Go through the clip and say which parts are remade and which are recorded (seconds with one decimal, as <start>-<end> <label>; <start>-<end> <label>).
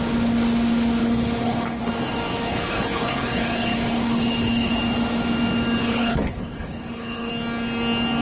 0.0-1.0 recorded; 1.0-1.8 remade; 1.8-2.5 recorded; 2.5-4.8 remade; 4.8-5.8 recorded; 5.8-7.3 remade; 7.3-8.2 recorded